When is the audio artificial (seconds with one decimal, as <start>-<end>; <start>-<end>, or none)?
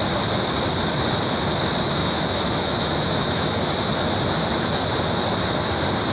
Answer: 2.0-3.7